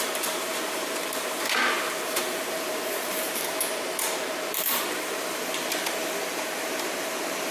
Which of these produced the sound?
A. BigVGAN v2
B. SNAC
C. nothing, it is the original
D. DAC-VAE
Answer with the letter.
A